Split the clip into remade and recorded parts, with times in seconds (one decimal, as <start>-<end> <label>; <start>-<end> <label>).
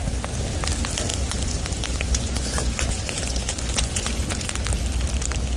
0.0-1.1 recorded; 1.1-4.5 remade; 4.5-5.6 recorded